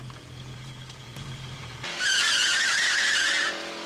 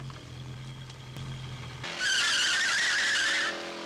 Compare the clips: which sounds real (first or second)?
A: second